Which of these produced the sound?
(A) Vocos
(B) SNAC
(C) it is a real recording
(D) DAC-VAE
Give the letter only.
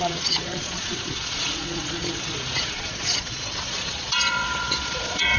A